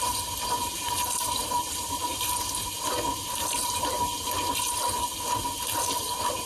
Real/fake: real